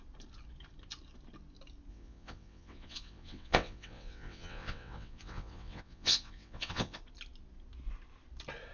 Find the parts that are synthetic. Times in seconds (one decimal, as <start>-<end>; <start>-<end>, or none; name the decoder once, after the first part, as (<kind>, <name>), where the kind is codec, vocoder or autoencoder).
1.9-7.0 (vocoder, WaveNeXt)